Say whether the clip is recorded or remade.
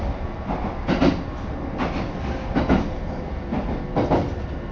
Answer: recorded